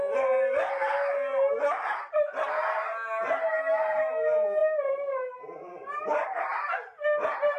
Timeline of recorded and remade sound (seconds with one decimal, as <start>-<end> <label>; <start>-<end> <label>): 0.0-4.6 recorded; 4.6-6.5 remade; 6.5-7.6 recorded